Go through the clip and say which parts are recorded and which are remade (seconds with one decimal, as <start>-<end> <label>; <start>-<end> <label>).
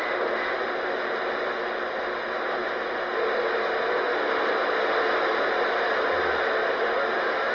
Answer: 0.0-7.5 recorded